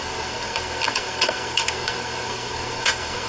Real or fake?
fake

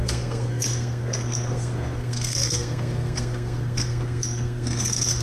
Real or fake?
fake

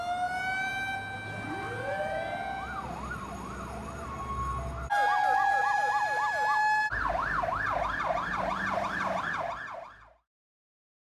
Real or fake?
real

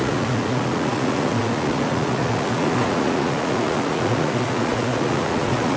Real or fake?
fake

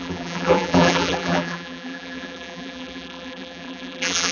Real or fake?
fake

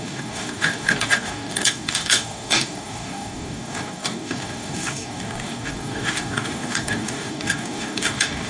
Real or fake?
fake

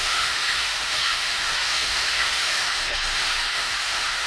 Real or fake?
fake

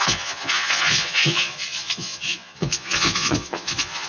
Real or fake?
fake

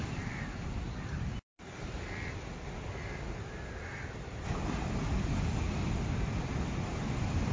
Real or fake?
real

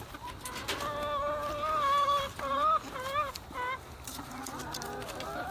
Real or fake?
real